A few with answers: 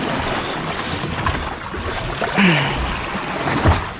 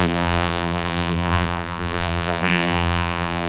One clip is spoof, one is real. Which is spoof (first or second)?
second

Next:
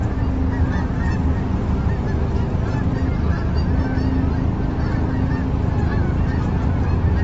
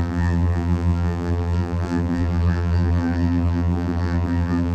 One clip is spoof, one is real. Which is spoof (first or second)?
second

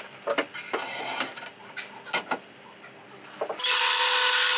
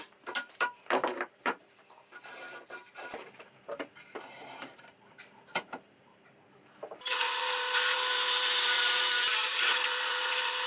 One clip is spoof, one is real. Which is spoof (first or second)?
second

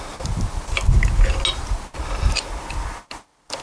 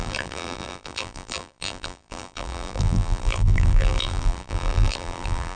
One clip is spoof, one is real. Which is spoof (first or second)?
second